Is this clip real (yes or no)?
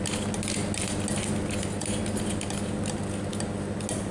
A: yes